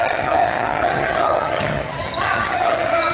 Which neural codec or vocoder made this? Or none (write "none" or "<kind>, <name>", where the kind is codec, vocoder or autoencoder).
vocoder, HiFi-GAN